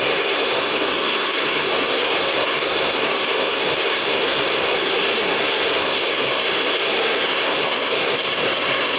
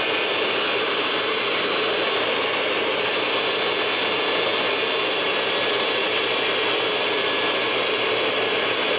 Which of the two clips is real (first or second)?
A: second